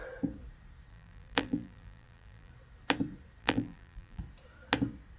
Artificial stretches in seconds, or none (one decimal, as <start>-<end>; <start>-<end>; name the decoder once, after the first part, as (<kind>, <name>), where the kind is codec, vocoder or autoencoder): 0.9-2.5 (vocoder, BigVGAN v2); 3.4-4.2